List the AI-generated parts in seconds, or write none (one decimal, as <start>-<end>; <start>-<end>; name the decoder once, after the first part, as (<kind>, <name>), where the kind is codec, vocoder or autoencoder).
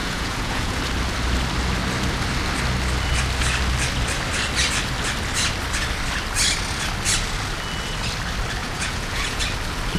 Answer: 0.0-0.8 (vocoder, Vocos); 8.6-9.4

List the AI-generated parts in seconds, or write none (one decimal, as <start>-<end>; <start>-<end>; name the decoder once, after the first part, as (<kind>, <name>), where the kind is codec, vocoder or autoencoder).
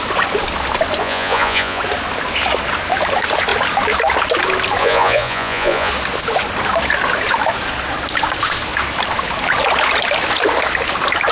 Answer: 1.0-1.8 (vocoder, Vocos); 4.8-5.9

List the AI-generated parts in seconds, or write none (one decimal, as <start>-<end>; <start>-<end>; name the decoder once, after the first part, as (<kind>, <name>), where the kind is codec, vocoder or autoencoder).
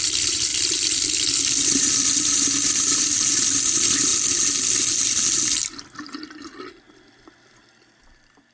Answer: 0.0-4.1 (vocoder, BigVGAN v2); 7.1-8.5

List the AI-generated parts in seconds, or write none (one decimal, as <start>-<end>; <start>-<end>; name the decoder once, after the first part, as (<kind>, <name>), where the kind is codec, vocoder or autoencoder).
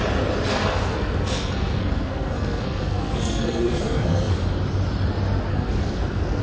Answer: 0.5-4.3 (codec, SNAC); 5.5-6.4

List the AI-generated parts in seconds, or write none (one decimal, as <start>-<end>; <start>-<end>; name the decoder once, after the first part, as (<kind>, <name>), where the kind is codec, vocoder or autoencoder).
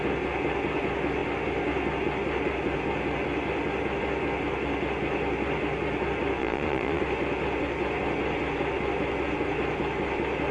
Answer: 6.4-7.0 (vocoder, Vocos)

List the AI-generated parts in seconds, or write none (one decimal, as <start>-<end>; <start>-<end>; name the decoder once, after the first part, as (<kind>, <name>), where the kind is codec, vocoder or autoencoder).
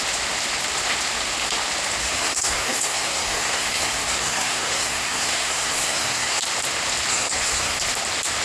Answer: 2.0-6.4 (codec, SNAC); 7.1-7.8